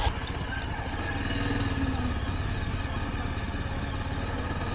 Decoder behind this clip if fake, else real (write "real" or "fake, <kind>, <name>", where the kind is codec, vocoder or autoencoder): real